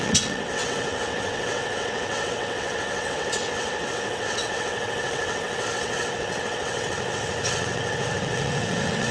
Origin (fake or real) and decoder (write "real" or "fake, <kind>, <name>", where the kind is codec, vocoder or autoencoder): fake, vocoder, WaveNeXt